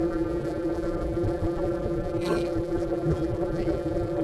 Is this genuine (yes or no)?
no